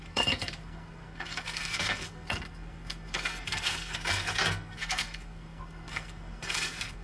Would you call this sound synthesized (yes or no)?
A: yes